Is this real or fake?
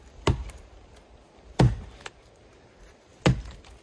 real